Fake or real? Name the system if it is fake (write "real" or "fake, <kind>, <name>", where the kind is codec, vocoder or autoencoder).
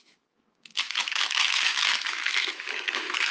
fake, autoencoder, DAC-VAE